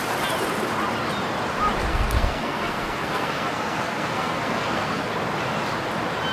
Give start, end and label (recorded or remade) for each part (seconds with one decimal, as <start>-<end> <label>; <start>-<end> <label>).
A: 0.0-1.9 recorded; 1.9-5.1 remade; 5.1-6.3 recorded

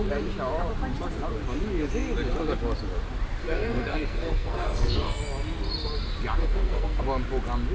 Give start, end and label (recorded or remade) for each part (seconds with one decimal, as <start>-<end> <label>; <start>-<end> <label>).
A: 0.0-3.4 recorded; 3.4-5.2 remade; 5.2-6.4 recorded; 6.4-7.0 remade; 7.0-7.7 recorded

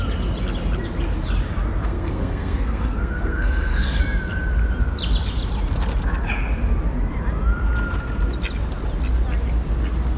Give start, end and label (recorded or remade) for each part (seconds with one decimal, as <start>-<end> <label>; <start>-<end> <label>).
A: 0.0-1.8 recorded; 1.8-4.0 remade; 4.0-10.2 recorded

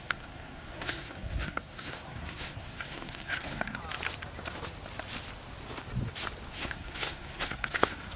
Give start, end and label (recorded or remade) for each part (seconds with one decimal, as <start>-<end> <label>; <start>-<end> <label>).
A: 0.0-3.8 remade; 3.8-6.5 recorded; 6.5-8.2 remade

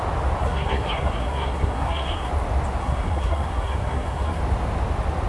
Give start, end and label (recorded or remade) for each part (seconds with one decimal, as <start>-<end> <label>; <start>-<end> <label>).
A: 0.0-0.4 recorded; 0.4-2.3 remade; 2.3-2.8 recorded; 2.8-4.4 remade; 4.4-5.3 recorded

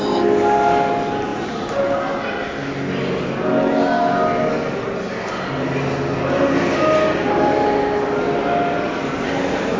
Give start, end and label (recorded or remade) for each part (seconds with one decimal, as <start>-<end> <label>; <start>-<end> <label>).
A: 0.0-9.8 recorded

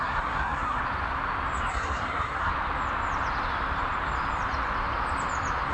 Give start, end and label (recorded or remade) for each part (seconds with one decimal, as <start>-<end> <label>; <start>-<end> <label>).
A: 0.0-0.8 remade; 0.8-1.7 recorded; 1.7-2.5 remade; 2.5-5.7 recorded

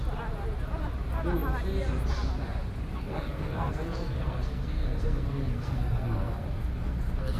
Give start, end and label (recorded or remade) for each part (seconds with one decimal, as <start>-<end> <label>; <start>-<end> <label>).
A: 0.0-2.9 recorded; 2.9-7.4 remade